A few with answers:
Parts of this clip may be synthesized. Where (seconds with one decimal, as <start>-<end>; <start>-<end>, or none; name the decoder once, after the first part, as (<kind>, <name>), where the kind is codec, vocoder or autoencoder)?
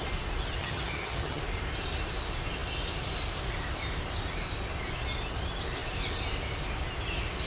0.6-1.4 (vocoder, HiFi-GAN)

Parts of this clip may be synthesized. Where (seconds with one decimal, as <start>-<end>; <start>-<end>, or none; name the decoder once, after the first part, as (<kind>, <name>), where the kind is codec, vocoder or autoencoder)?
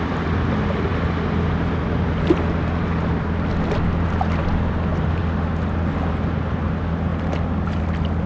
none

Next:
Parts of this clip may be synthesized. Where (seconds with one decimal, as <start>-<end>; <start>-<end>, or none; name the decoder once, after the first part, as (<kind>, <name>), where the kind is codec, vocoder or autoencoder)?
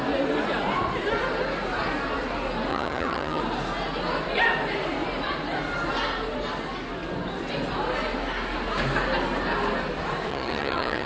2.7-3.4 (vocoder, HiFi-GAN); 10.3-11.1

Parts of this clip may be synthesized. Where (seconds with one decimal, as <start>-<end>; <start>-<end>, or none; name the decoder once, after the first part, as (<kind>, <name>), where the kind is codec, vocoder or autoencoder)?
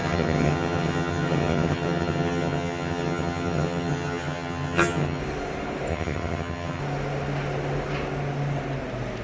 0.0-5.2 (vocoder, HiFi-GAN); 5.9-6.8